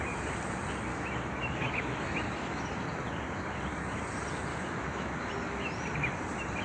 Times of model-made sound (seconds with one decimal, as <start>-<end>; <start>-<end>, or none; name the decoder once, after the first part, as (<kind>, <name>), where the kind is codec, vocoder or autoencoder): 0.9-2.6 (autoencoder, DAC-VAE); 4.5-5.3